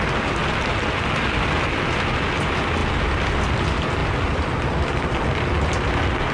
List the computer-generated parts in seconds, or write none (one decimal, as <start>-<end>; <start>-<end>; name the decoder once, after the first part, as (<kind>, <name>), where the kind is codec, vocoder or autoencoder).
none